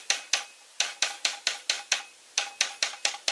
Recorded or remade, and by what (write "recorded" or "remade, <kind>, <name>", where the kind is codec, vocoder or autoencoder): recorded